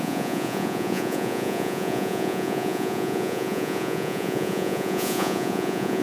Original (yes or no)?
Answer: no